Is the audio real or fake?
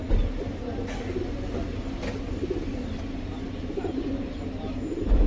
real